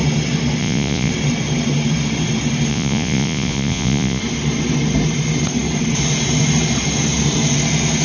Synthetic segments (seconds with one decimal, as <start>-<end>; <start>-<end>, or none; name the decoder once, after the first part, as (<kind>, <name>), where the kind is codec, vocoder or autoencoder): 0.6-1.1 (vocoder, Vocos); 2.7-4.2